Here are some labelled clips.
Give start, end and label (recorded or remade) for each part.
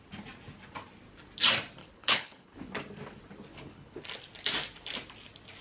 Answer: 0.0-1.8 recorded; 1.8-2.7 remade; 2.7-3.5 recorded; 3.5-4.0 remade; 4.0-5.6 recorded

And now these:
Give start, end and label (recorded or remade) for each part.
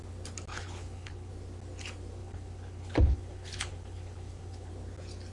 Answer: 0.0-0.5 recorded; 0.5-1.3 remade; 1.3-2.2 recorded; 2.2-4.7 remade; 4.7-5.3 recorded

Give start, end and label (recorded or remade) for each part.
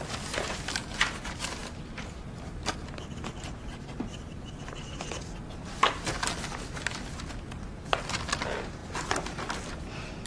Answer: 0.0-10.3 recorded